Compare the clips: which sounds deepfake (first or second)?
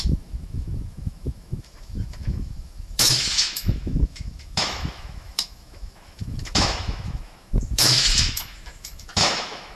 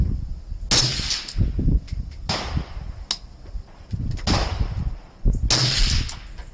first